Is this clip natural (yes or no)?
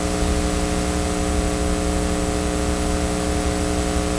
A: yes